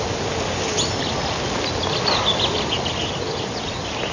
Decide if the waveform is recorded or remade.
recorded